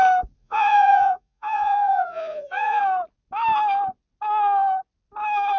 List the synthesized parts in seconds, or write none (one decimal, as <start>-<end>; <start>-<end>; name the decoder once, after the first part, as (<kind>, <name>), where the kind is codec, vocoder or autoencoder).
0.4-2.8 (vocoder, Vocos)